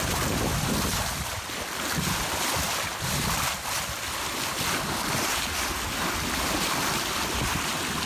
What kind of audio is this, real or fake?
fake